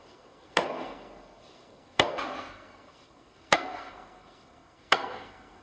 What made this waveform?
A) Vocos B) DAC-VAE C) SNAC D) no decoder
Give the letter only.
C